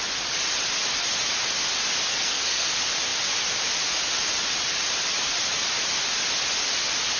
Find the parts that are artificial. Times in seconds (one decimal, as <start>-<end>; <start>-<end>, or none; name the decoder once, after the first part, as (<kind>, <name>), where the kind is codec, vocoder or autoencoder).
2.1-2.7 (codec, SNAC)